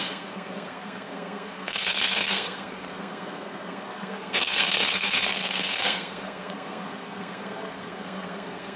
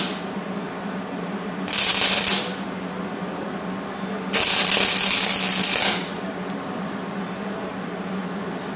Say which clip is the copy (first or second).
first